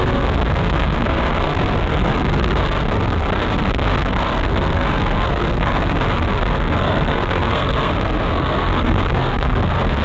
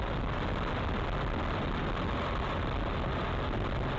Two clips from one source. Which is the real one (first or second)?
second